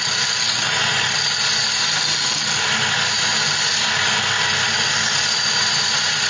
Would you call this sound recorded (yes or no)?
yes